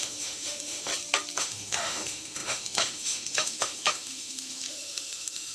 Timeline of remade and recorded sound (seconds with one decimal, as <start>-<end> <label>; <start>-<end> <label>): 0.0-0.9 remade; 0.9-1.4 recorded; 1.4-5.5 remade